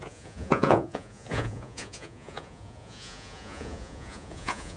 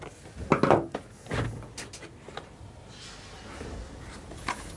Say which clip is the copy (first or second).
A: first